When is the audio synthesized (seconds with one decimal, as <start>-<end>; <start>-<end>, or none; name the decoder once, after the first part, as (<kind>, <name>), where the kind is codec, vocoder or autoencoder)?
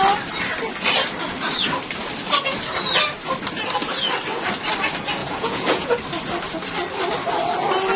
5.2-5.9 (vocoder, Vocos)